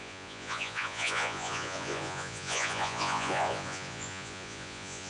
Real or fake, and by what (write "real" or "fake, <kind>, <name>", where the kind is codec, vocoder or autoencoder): fake, vocoder, Vocos